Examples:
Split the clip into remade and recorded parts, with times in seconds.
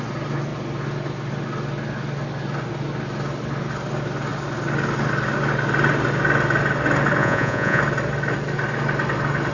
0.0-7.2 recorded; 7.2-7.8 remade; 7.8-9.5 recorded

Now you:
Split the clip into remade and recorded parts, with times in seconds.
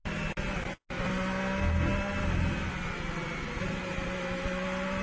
0.0-5.0 recorded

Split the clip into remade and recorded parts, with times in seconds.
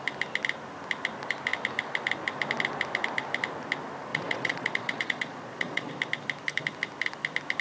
0.0-4.1 recorded; 4.1-5.9 remade; 5.9-7.6 recorded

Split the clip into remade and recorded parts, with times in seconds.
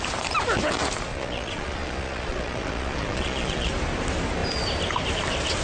0.0-1.1 recorded; 1.1-3.7 remade; 3.7-5.6 recorded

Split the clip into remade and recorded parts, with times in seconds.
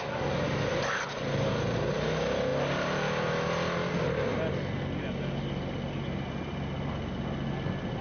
0.0-8.0 recorded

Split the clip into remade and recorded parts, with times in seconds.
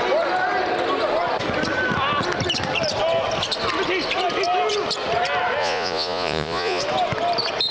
0.0-5.6 recorded; 5.6-6.8 remade; 6.8-7.7 recorded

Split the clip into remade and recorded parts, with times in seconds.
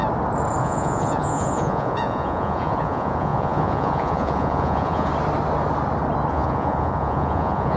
0.0-0.6 recorded; 0.6-5.1 remade; 5.1-6.3 recorded; 6.3-7.8 remade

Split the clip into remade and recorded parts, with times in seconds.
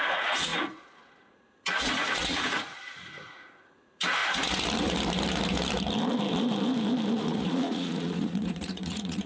0.0-4.2 remade; 4.2-7.2 recorded; 7.2-9.3 remade